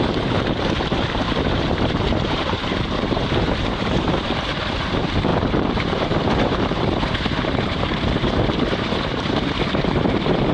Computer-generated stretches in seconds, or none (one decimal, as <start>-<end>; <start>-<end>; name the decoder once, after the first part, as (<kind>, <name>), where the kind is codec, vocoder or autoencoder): 0.0-10.5 (vocoder, BigVGAN v2)